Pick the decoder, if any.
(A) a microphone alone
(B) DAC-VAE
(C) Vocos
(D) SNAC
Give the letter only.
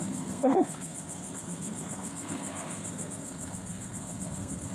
D